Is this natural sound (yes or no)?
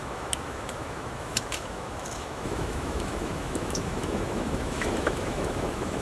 no